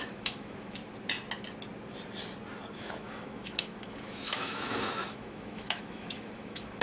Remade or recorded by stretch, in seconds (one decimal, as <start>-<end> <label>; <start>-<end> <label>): 0.0-0.8 remade; 0.8-2.7 recorded; 2.7-6.8 remade

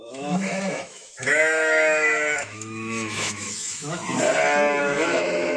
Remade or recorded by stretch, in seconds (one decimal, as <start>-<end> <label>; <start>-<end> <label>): 0.0-4.0 remade; 4.0-4.8 recorded; 4.8-5.6 remade

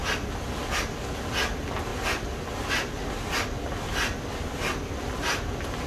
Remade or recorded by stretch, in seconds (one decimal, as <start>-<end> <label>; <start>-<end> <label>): 0.0-5.9 recorded

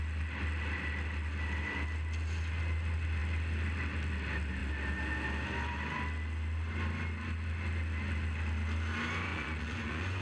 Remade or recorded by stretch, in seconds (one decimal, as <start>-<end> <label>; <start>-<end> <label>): 0.0-9.3 recorded; 9.3-10.2 remade

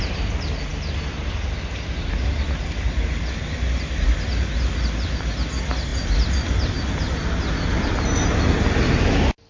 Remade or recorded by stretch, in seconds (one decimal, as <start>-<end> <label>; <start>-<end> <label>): 0.0-9.5 recorded

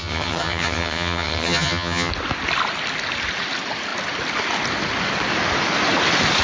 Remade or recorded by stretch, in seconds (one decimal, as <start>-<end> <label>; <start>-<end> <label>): 0.0-2.1 remade; 2.1-6.4 recorded

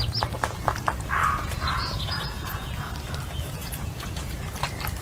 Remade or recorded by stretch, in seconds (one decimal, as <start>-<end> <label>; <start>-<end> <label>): 0.0-1.2 recorded; 1.2-2.8 remade; 2.8-3.6 recorded; 3.6-4.4 remade; 4.4-5.0 recorded